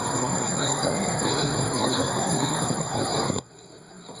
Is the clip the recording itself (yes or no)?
no